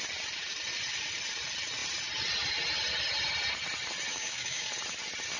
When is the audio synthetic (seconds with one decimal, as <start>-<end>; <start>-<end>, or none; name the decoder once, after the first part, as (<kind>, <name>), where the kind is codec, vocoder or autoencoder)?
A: 4.1-4.7 (codec, DAC)